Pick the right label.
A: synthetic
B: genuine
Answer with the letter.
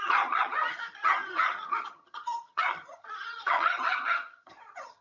A